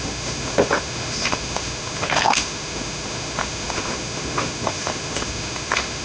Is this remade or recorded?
remade